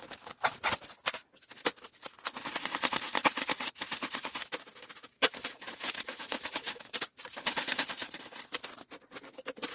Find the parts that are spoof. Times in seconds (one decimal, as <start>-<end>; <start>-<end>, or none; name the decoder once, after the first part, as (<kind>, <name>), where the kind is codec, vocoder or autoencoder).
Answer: 5.0-7.0 (autoencoder, DAC-VAE)